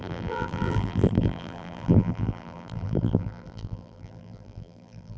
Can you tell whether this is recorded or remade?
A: remade